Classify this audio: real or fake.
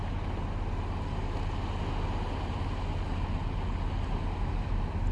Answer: real